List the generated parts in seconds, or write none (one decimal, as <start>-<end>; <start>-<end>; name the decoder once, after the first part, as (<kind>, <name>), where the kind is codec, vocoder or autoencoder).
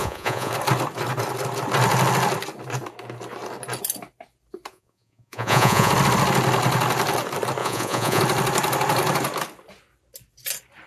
0.0-0.5 (vocoder, Vocos); 4.7-5.9; 7.6-8.2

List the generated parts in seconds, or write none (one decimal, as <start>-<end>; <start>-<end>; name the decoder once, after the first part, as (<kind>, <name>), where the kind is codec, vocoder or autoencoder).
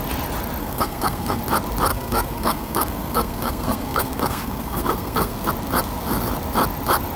0.6-1.4 (codec, SNAC); 1.9-5.5